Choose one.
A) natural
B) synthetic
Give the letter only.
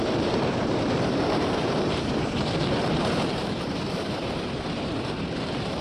B